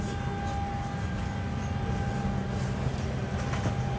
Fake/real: real